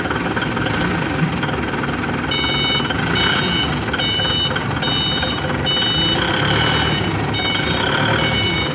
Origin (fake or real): real